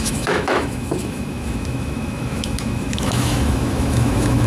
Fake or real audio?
fake